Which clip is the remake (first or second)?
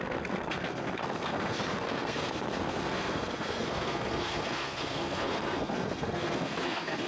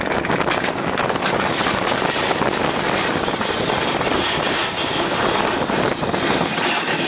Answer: first